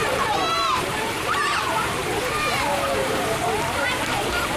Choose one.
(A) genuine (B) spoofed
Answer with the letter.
B